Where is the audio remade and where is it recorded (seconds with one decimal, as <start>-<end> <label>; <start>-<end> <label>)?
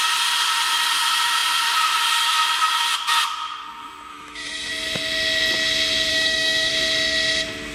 0.0-4.1 recorded; 4.1-4.7 remade; 4.7-6.1 recorded; 6.1-6.7 remade; 6.7-7.7 recorded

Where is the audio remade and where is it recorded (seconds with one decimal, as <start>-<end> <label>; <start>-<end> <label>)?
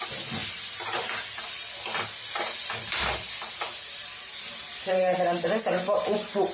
0.0-0.4 recorded; 0.4-1.0 remade; 1.0-2.8 recorded; 2.8-6.5 remade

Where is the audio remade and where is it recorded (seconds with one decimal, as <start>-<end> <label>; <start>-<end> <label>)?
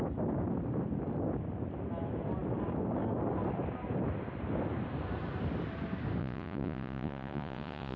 0.0-6.2 recorded; 6.2-8.0 remade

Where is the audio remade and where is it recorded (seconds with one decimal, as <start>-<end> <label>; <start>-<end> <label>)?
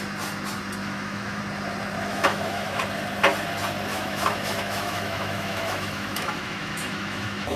0.0-0.8 recorded; 0.8-1.4 remade; 1.4-2.1 recorded; 2.1-2.8 remade; 2.8-3.9 recorded; 3.9-7.6 remade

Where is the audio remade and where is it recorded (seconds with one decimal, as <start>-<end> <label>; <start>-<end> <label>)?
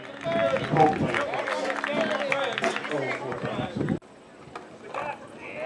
0.0-5.7 recorded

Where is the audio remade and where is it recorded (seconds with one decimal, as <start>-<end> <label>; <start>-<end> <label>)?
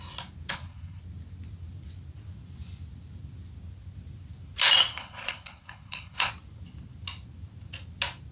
0.0-0.5 recorded; 0.5-1.0 remade; 1.0-4.9 recorded; 4.9-6.3 remade; 6.3-8.3 recorded